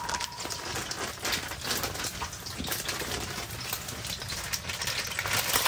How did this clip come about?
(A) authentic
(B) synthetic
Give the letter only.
A